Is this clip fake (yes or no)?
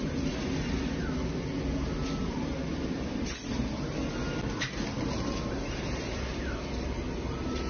no